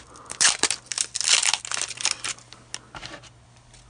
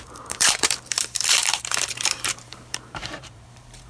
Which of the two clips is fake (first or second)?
second